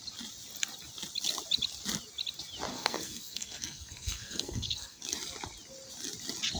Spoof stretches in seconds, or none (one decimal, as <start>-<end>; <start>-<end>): 2.7-5.0